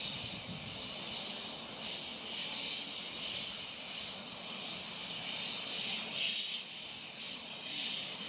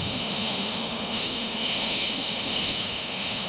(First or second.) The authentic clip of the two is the first